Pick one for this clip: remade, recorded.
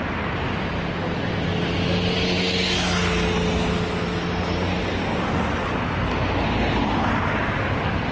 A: recorded